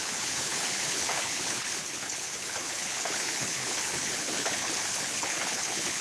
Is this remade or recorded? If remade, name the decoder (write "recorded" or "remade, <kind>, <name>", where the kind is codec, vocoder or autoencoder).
remade, codec, HILCodec